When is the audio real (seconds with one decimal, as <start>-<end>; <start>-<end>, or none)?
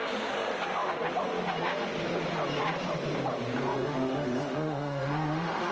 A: 0.0-3.7